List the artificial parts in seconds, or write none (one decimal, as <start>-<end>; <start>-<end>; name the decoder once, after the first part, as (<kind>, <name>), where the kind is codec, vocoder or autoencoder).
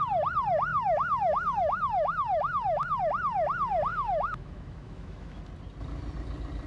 0.7-3.0 (autoencoder, DAC-VAE); 3.9-5.4